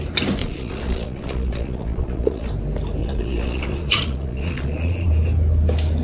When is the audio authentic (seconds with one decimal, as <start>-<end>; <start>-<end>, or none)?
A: 0.0-0.4; 2.5-3.0; 5.1-6.0